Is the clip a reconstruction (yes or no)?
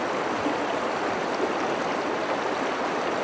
no